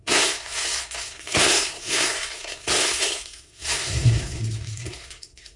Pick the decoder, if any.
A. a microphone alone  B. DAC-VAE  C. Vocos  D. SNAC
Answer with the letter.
D